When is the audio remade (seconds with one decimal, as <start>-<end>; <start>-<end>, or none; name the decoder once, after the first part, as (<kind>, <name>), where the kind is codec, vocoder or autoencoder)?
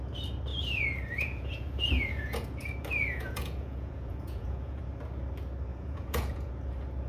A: 0.5-4.8 (vocoder, Vocos); 5.7-6.5